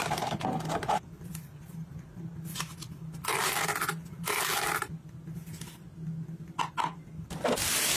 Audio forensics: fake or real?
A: real